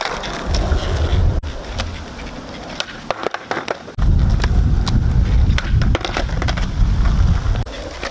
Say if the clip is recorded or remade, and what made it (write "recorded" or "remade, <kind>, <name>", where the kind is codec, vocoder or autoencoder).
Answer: recorded